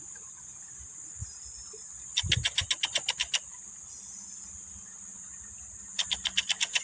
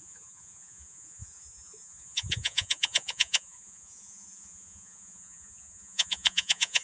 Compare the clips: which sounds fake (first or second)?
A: second